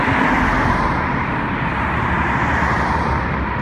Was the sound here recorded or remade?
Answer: recorded